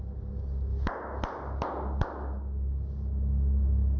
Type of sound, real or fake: real